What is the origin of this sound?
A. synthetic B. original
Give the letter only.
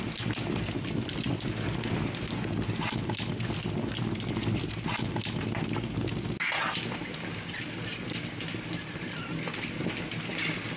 B